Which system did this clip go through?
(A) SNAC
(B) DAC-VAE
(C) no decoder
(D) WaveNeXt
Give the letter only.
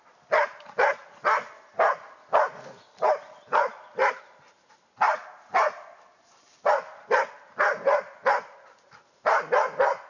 C